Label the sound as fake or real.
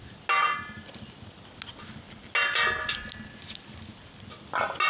real